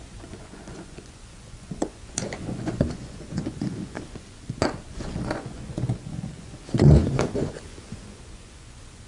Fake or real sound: fake